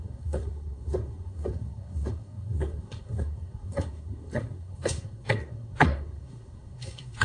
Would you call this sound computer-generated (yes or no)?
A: yes